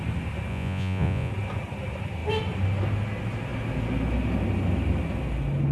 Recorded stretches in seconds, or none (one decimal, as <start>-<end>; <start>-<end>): 0.0-0.5; 1.3-5.7